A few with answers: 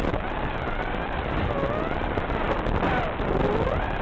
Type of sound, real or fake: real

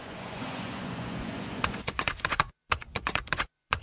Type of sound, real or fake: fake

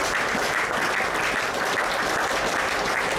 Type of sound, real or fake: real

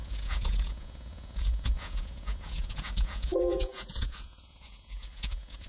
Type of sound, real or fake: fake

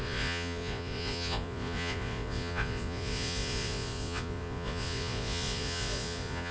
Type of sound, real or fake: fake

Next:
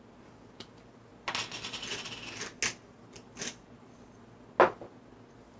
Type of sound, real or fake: real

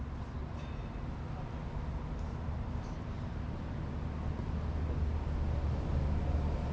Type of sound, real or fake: real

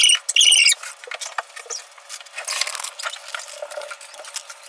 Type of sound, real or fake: real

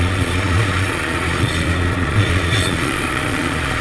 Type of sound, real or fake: fake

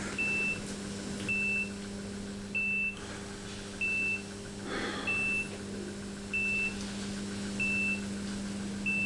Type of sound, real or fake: real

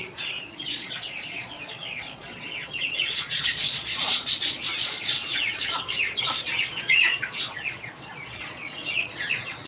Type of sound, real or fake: fake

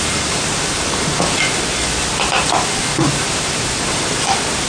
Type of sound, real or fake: real